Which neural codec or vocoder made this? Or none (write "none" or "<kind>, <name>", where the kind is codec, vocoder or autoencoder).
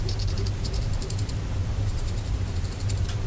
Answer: vocoder, BigVGAN v2